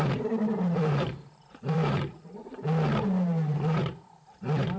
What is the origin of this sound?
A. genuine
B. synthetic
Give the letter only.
B